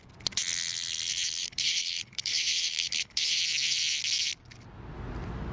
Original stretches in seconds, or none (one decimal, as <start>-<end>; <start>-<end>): 0.0-1.4; 3.4-5.5